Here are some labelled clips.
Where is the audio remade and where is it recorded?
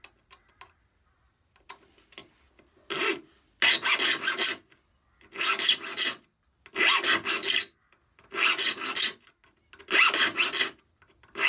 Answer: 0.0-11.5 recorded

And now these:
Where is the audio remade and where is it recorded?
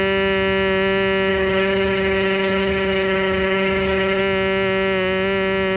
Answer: 0.0-1.3 recorded; 1.3-4.2 remade; 4.2-5.8 recorded